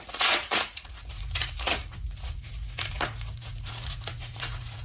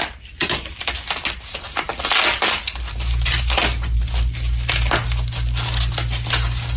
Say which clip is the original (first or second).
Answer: second